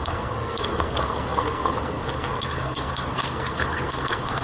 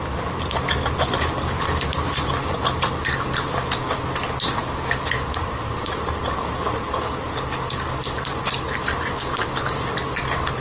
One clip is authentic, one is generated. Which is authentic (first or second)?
second